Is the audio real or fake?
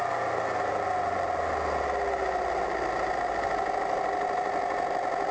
real